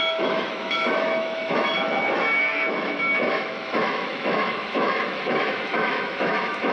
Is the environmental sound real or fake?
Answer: fake